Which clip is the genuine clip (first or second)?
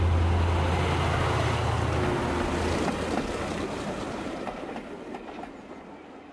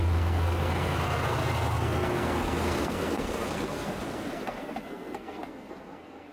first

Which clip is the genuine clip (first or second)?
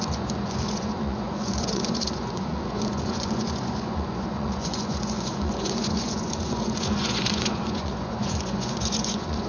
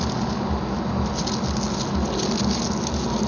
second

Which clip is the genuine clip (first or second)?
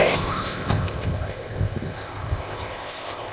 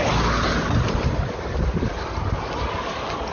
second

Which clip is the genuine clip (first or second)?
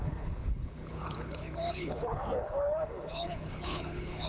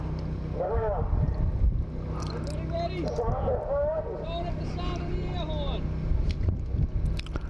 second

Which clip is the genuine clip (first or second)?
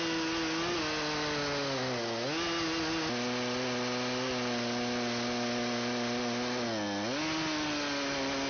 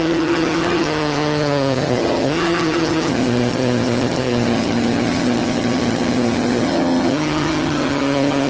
first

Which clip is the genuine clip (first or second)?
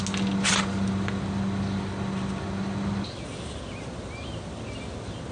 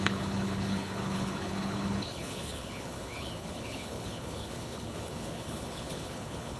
first